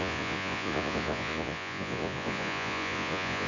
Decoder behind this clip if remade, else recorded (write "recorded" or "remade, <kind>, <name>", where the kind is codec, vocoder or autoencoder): remade, vocoder, Vocos